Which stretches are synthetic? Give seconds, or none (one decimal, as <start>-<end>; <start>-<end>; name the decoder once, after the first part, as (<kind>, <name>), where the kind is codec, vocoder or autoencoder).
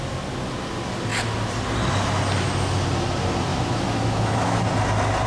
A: 3.5-4.6 (autoencoder, DAC-VAE)